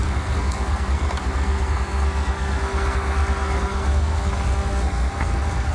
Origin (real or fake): fake